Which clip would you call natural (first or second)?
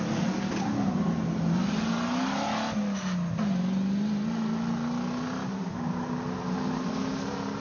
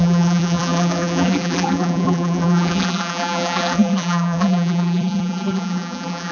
first